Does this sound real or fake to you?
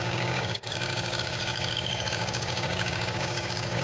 fake